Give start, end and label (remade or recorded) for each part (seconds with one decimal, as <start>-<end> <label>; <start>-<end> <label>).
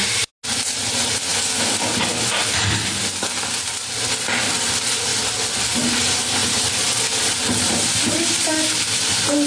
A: 0.0-1.3 recorded; 1.3-1.9 remade; 1.9-9.5 recorded